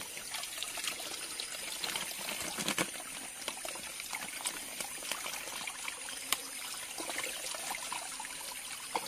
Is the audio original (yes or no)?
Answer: yes